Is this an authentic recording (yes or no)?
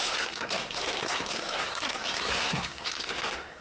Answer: no